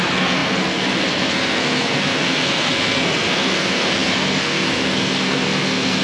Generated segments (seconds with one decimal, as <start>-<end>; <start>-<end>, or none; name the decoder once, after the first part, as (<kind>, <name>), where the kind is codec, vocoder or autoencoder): 0.0-6.0 (codec, SNAC)